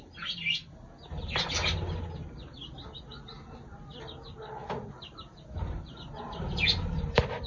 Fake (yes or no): no